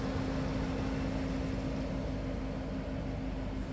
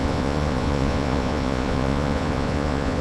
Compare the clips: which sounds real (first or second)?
first